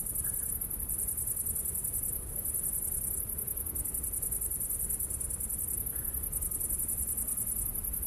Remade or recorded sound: recorded